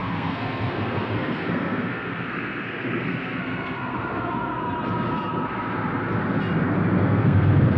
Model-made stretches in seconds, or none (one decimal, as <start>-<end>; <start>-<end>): 0.0-4.7; 7.0-7.8